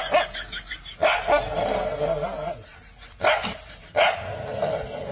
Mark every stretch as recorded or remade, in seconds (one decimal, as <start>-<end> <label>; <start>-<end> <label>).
0.0-5.1 recorded